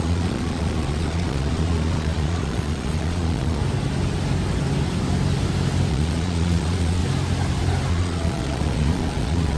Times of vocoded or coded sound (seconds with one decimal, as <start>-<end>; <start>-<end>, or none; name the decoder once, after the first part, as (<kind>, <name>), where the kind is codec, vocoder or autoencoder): 0.0-3.6 (vocoder, Vocos); 5.9-7.0; 7.9-9.6